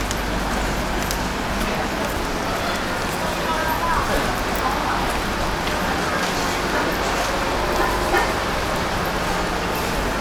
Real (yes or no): yes